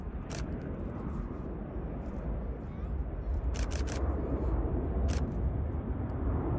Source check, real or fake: fake